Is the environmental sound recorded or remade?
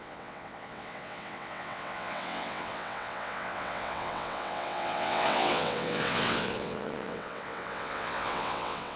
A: remade